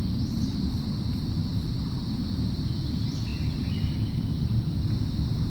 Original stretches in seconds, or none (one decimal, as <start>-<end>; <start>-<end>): 0.0-1.4; 2.0-3.3; 5.1-5.5